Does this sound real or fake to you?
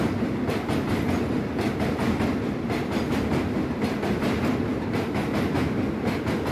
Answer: real